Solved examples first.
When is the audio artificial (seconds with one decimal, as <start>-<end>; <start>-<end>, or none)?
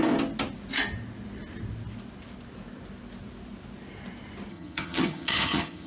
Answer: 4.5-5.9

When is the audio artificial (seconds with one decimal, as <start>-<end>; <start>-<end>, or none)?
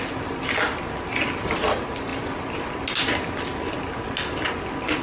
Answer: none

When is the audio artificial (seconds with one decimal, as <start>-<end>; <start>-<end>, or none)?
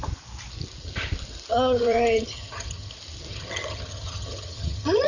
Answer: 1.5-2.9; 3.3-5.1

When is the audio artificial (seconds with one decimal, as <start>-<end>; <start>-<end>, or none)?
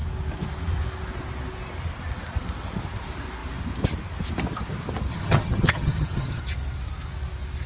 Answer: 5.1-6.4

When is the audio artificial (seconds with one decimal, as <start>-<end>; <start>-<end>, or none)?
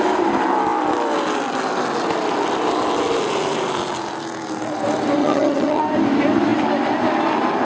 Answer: 5.2-5.8